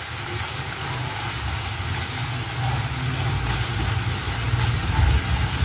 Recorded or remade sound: recorded